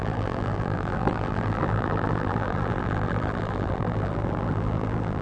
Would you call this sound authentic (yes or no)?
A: no